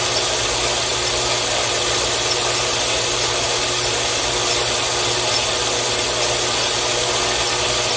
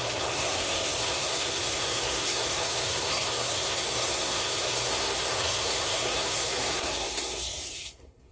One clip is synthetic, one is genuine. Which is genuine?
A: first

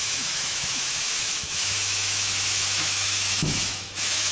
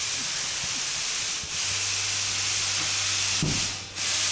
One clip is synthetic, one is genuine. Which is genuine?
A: second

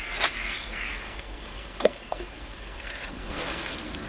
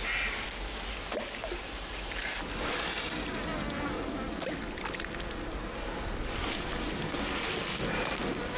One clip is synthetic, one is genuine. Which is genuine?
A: second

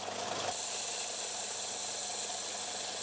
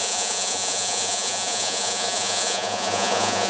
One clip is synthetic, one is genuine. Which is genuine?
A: first